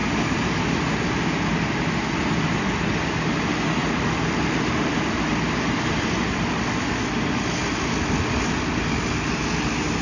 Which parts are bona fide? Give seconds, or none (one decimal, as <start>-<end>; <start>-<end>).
0.0-3.8; 5.3-10.0